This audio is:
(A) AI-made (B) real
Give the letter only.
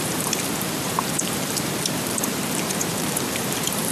A